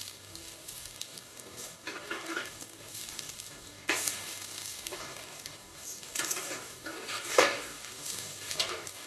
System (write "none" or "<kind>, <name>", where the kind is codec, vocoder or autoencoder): codec, DAC